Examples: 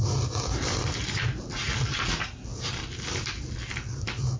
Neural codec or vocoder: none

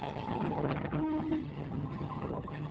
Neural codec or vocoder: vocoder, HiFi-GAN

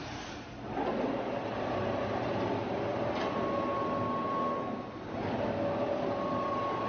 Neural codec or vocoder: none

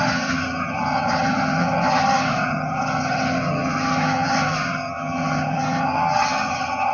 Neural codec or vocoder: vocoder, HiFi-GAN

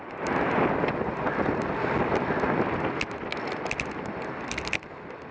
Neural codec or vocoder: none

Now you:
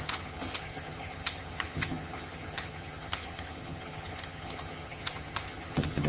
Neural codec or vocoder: vocoder, HiFi-GAN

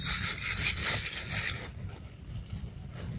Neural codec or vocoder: none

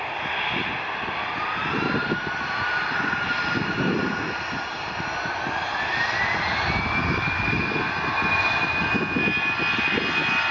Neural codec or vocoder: none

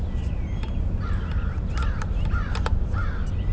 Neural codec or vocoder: none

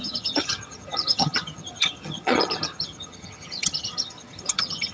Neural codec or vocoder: vocoder, HiFi-GAN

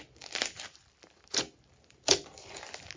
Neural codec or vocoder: none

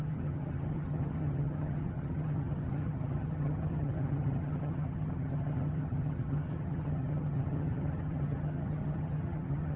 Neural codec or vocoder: vocoder, HiFi-GAN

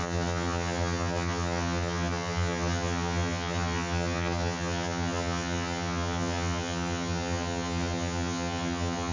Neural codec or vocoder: vocoder, HiFi-GAN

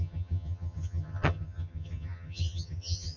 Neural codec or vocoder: vocoder, HiFi-GAN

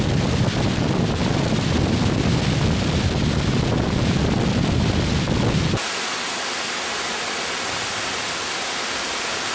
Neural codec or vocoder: none